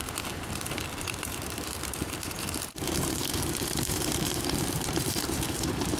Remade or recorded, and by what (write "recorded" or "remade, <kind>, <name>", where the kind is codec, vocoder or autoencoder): remade, vocoder, BigVGAN v2